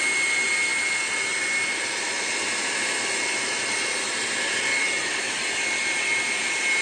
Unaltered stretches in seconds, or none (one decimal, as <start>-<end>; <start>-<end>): 0.0-6.8